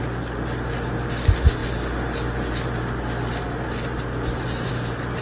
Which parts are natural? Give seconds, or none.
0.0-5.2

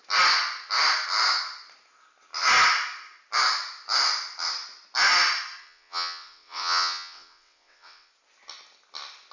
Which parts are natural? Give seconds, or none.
0.0-5.6; 8.1-9.3

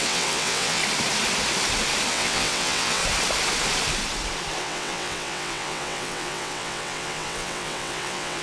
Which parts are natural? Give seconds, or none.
0.8-2.1; 3.0-4.6

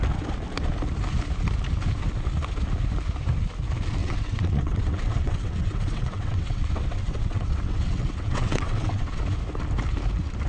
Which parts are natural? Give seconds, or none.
0.0-4.0; 9.2-10.5

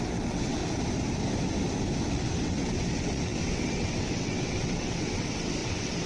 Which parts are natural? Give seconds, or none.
0.6-2.1

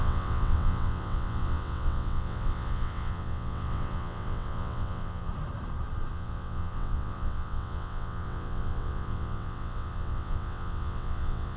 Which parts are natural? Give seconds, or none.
5.3-6.1

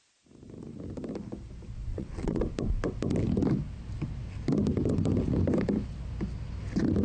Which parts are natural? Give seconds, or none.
0.0-1.9; 2.4-7.0